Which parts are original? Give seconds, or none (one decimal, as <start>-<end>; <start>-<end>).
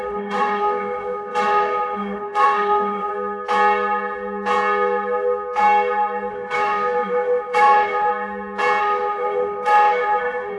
3.1-6.3; 8.1-8.8